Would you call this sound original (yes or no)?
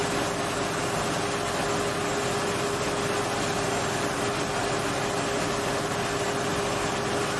yes